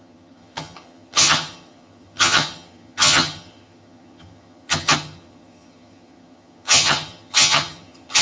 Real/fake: fake